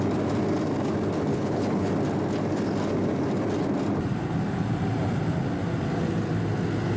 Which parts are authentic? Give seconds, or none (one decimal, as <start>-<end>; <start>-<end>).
0.0-1.3; 1.9-7.0